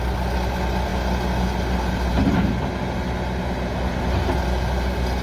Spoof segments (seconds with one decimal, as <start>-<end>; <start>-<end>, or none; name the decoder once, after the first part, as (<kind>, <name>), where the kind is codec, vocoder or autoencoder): none